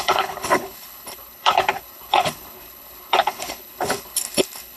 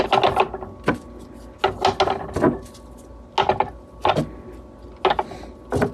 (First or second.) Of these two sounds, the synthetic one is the first